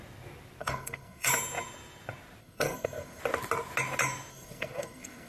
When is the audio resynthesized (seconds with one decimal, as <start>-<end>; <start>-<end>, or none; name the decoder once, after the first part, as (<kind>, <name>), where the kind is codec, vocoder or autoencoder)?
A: 0.6-1.3 (codec, SNAC); 2.4-3.2; 4.3-5.3